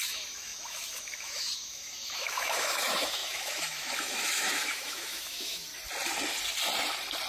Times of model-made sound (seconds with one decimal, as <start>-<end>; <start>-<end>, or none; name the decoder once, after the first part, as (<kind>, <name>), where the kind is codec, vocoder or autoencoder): 0.0-5.7 (autoencoder, DAC-VAE)